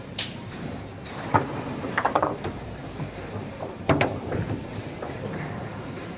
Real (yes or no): no